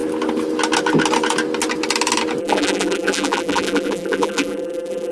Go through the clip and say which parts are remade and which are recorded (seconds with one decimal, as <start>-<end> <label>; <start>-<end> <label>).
0.0-2.4 recorded; 2.4-5.1 remade